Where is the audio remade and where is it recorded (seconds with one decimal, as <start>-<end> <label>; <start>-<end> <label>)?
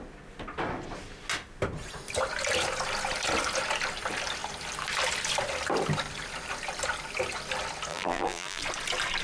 0.0-7.9 recorded; 7.9-8.6 remade; 8.6-9.2 recorded